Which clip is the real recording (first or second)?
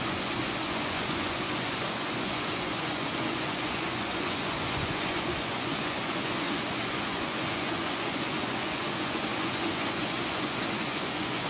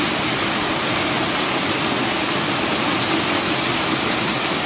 second